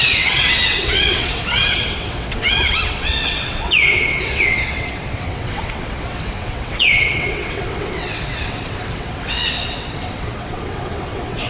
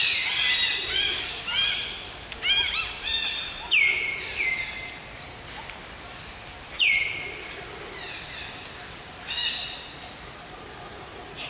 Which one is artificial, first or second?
first